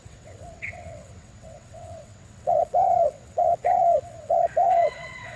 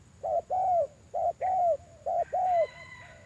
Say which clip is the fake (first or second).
first